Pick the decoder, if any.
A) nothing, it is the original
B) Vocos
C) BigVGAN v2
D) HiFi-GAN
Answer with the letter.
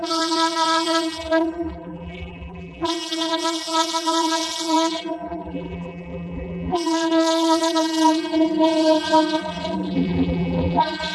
C